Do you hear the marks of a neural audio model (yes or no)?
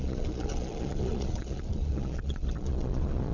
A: yes